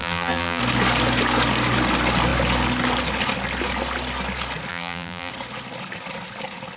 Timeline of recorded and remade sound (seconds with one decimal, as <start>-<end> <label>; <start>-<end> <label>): 0.0-0.6 remade; 0.6-4.7 recorded; 4.7-5.3 remade; 5.3-6.8 recorded